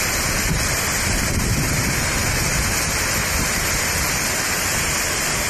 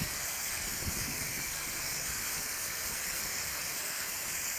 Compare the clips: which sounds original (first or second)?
first